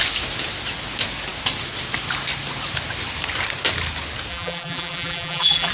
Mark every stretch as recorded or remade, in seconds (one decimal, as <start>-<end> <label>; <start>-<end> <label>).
0.0-4.3 recorded; 4.3-5.7 remade

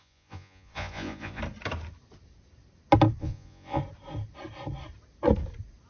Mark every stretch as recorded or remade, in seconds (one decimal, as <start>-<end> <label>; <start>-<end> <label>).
0.0-1.4 remade; 1.4-3.2 recorded; 3.2-3.8 remade; 3.8-5.9 recorded

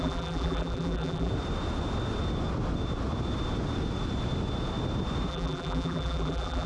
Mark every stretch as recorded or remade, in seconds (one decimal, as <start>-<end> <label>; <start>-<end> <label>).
0.0-1.3 remade; 1.3-5.3 recorded; 5.3-6.7 remade

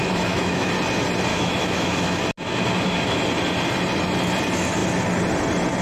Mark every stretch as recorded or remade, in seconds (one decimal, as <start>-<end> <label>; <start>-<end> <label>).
0.0-0.7 remade; 0.7-1.3 recorded; 1.3-2.2 remade; 2.2-5.8 recorded

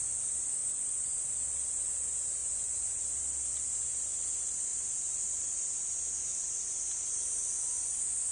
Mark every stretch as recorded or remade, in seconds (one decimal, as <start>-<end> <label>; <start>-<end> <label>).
0.0-0.6 recorded; 0.6-1.2 remade; 1.2-2.4 recorded; 2.4-3.0 remade; 3.0-8.3 recorded

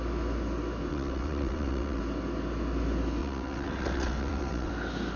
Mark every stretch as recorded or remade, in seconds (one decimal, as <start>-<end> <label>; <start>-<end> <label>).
0.0-0.9 recorded; 0.9-2.0 remade; 2.0-3.2 recorded; 3.2-4.7 remade; 4.7-5.2 recorded